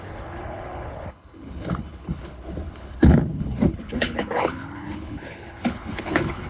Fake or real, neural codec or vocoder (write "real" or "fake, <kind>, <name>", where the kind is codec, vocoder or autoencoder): fake, codec, HILCodec